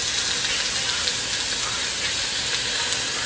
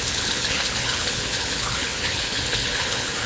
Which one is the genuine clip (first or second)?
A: first